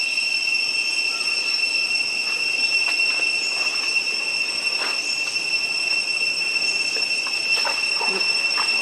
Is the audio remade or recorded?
recorded